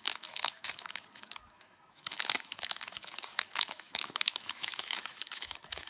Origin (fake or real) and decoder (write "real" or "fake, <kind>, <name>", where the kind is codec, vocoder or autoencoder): fake, autoencoder, DAC-VAE